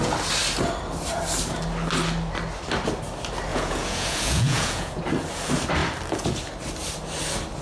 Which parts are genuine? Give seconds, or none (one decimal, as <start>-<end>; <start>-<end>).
0.0-3.5; 5.0-7.6

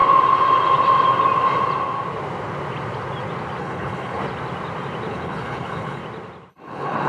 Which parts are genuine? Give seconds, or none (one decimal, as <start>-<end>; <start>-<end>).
0.0-3.6; 4.2-5.1; 6.0-6.5

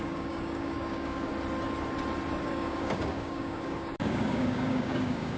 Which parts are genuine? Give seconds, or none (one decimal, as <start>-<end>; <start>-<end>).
1.3-2.4

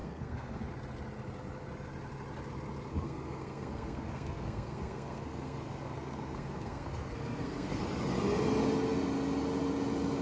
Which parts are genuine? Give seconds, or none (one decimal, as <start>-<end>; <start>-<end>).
0.6-2.9; 7.8-10.2

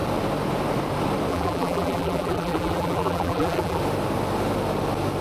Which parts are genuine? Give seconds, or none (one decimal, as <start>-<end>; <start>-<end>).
0.0-1.3; 3.8-5.2

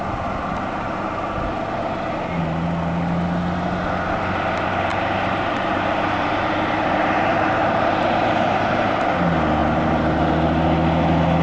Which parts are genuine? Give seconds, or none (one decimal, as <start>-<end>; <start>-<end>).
0.0-4.9; 9.0-9.6; 10.3-11.4

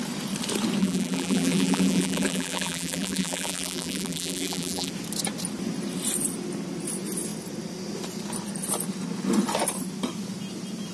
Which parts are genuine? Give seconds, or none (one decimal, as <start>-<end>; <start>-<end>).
0.0-0.8; 4.9-10.9